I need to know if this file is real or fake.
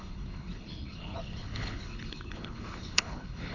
fake